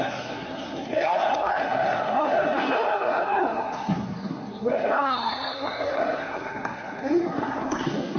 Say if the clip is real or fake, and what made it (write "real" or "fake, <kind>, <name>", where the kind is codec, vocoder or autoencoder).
fake, codec, SNAC